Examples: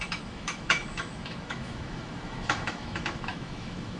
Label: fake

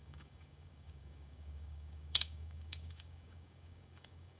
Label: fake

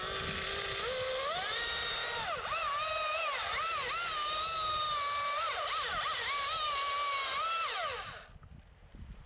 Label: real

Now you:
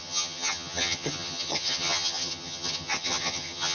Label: fake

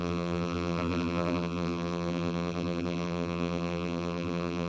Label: fake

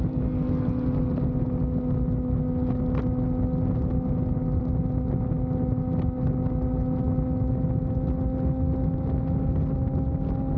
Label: real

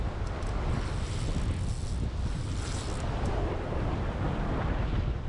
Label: real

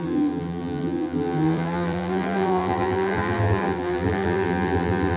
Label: fake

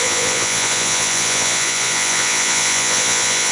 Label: fake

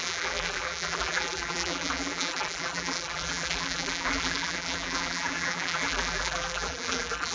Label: fake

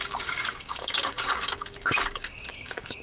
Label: fake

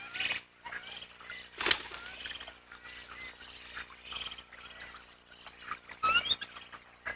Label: real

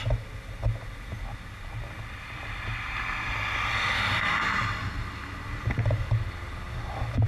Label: real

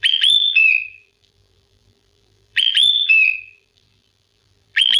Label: fake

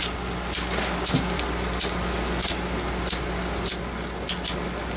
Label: real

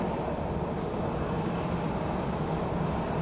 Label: real